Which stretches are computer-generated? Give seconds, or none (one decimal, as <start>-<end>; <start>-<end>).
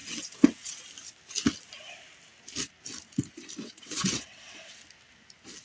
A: 0.0-0.8; 3.6-4.8